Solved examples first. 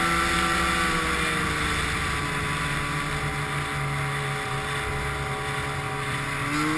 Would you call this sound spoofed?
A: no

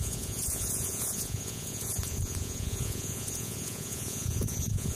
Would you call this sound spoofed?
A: yes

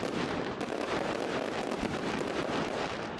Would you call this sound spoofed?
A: no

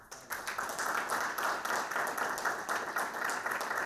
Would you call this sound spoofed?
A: no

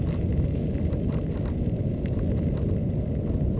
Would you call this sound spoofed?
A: no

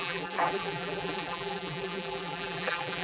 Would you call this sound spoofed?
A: yes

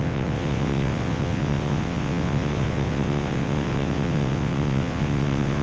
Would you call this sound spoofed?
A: yes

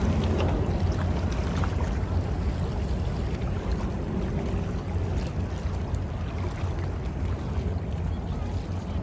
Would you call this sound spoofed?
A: no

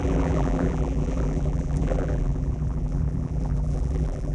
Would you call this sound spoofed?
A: yes